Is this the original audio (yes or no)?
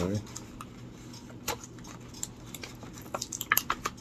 yes